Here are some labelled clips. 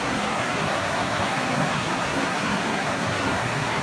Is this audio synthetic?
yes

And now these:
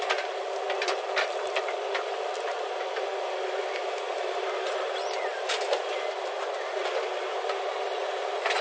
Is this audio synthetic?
yes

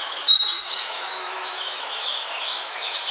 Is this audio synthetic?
yes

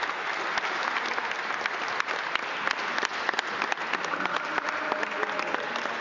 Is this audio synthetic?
no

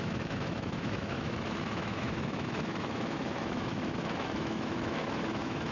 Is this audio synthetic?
yes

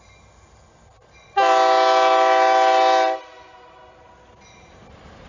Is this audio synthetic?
no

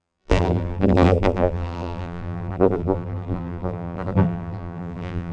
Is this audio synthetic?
yes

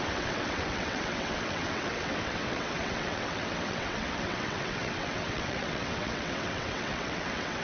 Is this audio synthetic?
yes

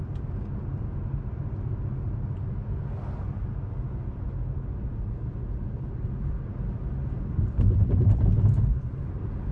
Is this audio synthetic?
no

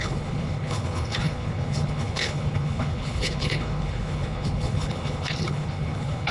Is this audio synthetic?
yes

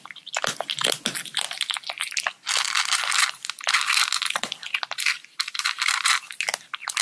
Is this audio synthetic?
no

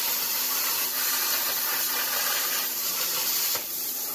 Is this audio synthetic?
yes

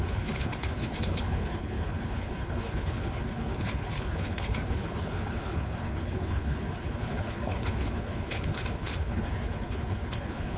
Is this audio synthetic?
yes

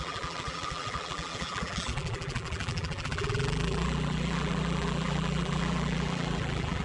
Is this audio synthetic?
yes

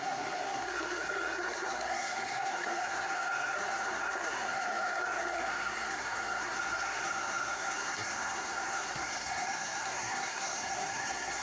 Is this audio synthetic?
yes